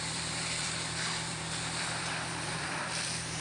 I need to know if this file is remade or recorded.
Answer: remade